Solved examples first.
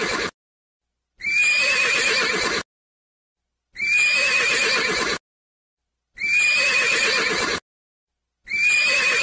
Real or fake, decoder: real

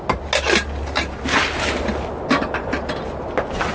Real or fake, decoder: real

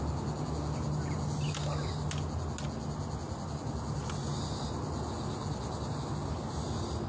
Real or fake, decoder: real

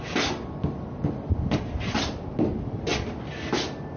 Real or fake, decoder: real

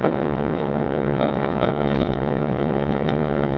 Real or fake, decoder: fake, vocoder, WaveNeXt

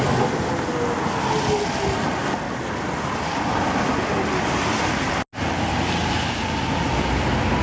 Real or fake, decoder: real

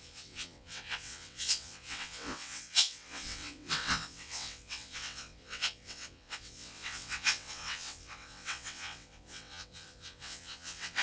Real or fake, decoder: fake, vocoder, WaveNeXt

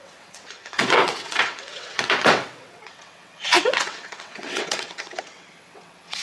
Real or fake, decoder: fake, vocoder, WaveNeXt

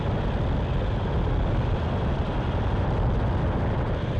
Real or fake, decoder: real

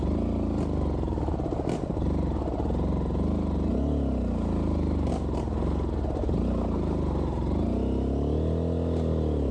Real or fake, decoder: real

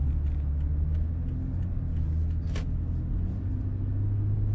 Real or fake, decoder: real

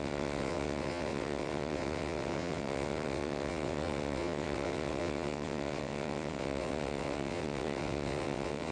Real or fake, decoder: fake, vocoder, WaveNeXt